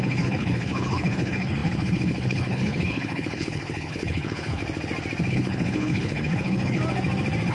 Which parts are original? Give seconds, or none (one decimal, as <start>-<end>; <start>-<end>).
4.6-5.3; 6.8-7.5